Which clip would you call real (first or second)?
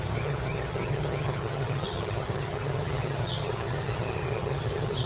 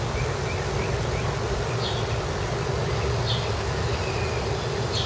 second